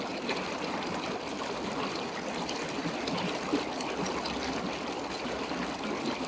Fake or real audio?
real